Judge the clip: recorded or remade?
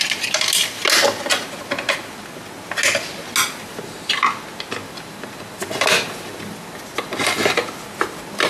recorded